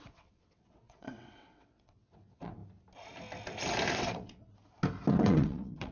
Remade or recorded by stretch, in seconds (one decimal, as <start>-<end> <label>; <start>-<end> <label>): 0.0-2.6 remade; 2.6-3.9 recorded; 3.9-4.5 remade; 4.5-5.1 recorded; 5.1-5.9 remade